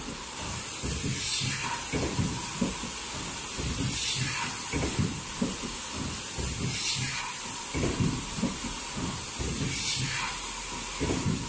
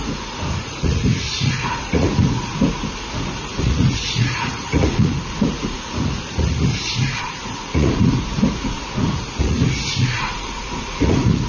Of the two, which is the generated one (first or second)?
second